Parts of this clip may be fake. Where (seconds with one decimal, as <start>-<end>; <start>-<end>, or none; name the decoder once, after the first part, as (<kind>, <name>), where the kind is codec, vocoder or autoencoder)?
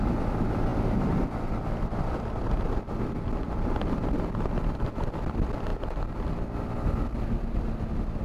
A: none